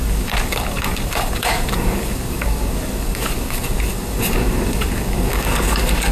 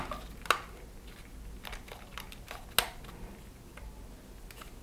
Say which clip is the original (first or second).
second